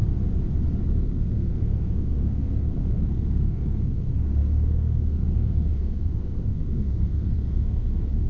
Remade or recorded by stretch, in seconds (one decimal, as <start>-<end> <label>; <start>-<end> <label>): 0.0-1.0 recorded; 1.0-8.3 remade